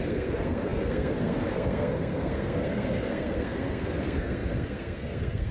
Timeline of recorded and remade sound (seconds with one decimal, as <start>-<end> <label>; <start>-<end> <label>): 0.0-5.5 remade